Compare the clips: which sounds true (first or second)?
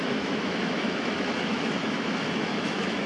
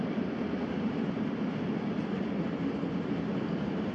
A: second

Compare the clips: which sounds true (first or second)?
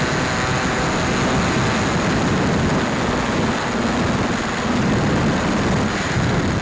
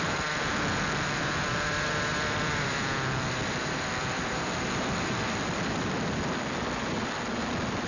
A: first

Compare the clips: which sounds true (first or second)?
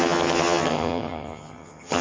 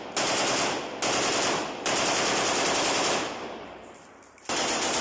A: second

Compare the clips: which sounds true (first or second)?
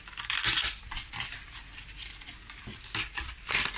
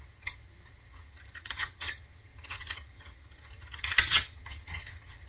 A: first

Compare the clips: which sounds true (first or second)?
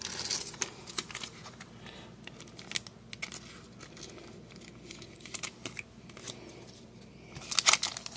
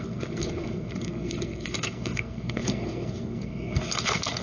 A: first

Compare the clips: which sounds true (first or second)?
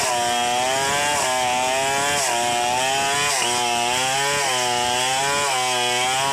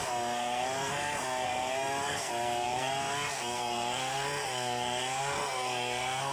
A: first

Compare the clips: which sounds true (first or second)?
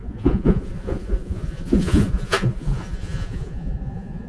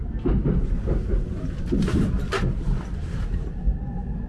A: second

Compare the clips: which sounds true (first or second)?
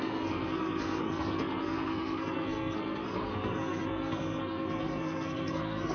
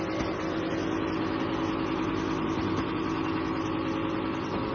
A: second